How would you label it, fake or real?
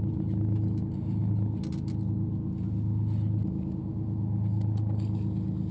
real